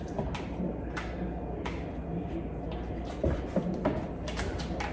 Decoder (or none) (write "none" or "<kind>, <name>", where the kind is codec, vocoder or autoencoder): none